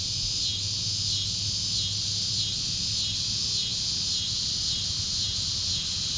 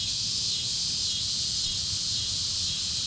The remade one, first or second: second